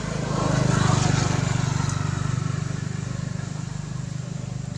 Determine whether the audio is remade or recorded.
recorded